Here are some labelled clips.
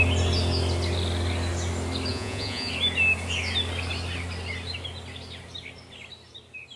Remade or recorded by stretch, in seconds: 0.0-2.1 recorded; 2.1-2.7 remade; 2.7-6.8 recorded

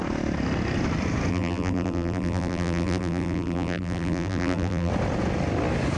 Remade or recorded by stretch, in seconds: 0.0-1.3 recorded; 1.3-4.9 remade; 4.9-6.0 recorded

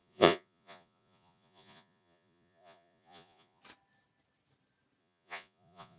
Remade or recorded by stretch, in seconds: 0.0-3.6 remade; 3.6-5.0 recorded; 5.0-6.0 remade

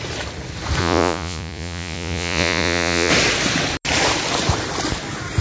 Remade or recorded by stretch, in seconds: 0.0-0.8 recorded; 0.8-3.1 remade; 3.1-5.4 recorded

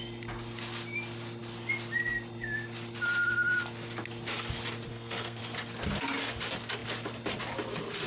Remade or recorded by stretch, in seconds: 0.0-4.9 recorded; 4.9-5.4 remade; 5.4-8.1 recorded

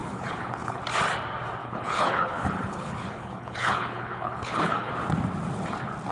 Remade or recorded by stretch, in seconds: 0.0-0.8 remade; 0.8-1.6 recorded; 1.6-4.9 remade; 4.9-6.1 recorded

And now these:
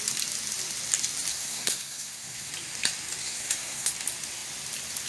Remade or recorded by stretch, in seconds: 0.0-1.3 recorded; 1.3-2.5 remade; 2.5-3.2 recorded; 3.2-3.9 remade; 3.9-5.1 recorded

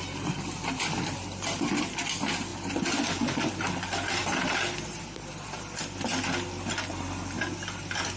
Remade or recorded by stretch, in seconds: 0.0-8.2 recorded